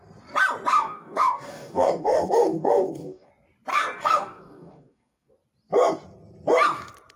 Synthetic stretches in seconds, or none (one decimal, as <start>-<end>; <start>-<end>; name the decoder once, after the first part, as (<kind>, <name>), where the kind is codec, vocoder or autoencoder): 0.7-3.3 (codec, DAC); 3.7-5.3